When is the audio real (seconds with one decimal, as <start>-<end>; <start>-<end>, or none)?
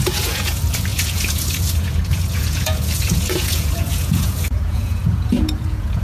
none